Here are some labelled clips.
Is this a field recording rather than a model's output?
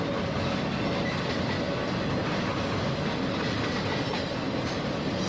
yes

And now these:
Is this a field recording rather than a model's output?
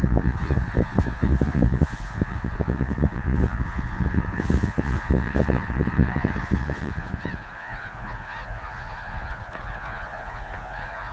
no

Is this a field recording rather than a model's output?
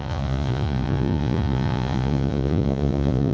no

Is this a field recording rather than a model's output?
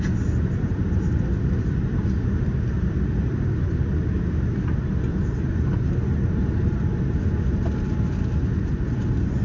yes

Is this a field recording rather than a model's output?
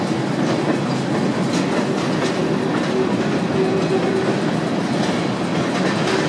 yes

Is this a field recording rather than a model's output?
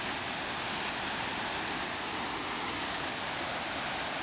yes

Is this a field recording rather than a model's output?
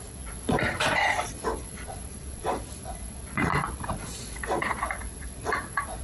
no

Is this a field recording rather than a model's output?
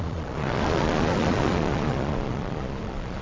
no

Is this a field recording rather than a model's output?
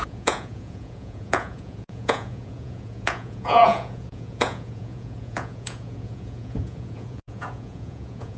no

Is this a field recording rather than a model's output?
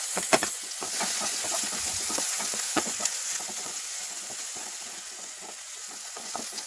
no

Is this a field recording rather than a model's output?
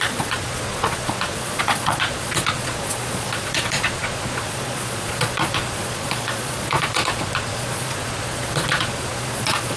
no